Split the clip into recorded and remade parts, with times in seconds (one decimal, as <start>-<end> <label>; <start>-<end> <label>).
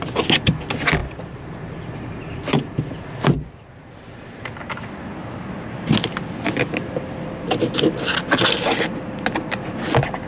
0.0-10.3 recorded